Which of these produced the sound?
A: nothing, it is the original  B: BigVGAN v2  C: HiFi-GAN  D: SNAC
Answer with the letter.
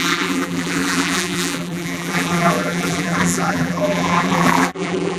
B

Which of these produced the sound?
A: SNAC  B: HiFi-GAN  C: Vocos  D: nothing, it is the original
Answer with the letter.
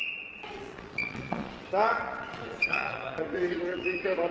C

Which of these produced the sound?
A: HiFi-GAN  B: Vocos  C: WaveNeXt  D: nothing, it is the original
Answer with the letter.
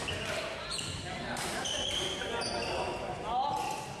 D